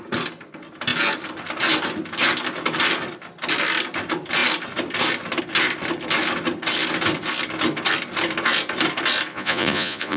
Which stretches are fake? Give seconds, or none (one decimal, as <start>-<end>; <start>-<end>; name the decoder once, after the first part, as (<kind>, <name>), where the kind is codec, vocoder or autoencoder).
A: 9.3-10.2 (vocoder, Vocos)